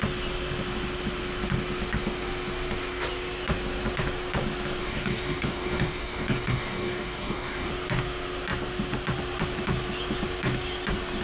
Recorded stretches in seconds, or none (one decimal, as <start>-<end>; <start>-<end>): 0.0-4.8; 7.7-11.2